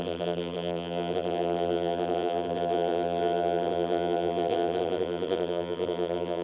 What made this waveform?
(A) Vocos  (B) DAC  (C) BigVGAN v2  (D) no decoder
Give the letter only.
C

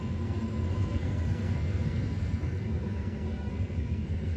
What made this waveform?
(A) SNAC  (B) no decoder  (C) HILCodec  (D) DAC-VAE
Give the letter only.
A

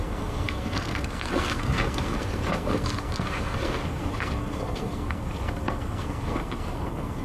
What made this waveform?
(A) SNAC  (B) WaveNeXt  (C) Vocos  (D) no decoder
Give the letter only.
A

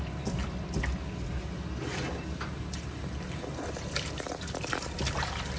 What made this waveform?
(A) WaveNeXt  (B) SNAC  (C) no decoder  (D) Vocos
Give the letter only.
C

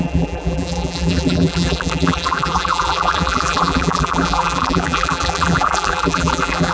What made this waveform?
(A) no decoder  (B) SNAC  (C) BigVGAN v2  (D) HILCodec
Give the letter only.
C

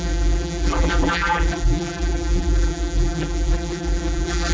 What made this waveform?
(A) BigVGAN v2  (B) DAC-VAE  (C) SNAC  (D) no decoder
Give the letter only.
A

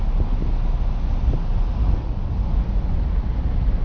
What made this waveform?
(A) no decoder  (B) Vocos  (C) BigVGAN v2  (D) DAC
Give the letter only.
A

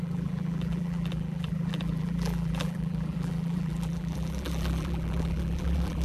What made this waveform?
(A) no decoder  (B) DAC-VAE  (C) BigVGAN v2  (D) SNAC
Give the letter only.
C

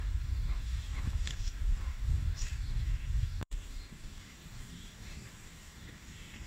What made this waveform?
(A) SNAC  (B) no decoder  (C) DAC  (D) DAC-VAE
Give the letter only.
C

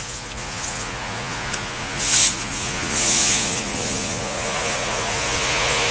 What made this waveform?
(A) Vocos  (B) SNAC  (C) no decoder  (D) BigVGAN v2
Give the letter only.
A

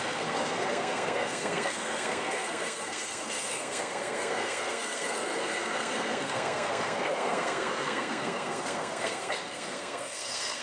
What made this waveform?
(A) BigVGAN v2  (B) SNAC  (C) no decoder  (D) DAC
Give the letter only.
B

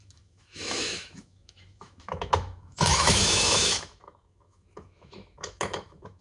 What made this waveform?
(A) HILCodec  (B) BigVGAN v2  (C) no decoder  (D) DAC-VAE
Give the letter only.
D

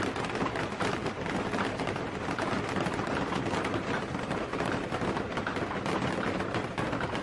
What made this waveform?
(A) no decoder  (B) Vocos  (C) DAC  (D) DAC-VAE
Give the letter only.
A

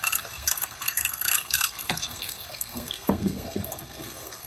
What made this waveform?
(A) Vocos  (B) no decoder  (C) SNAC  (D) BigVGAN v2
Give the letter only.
C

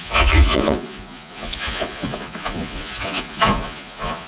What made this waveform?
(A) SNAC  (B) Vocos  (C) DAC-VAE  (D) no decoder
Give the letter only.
B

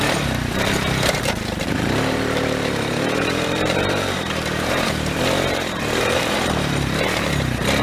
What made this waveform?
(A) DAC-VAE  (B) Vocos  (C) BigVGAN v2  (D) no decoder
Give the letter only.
C